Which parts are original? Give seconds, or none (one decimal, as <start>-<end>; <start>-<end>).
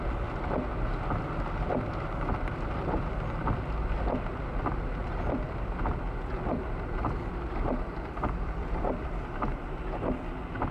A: 0.0-5.0; 9.2-10.7